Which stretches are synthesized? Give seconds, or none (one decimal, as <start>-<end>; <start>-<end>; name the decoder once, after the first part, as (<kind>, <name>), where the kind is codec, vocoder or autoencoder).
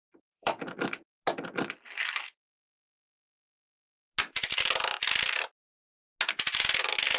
0.0-0.6 (vocoder, BigVGAN v2)